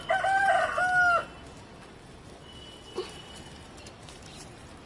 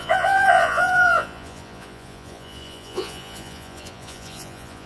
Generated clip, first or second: second